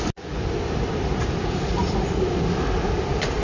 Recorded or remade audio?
recorded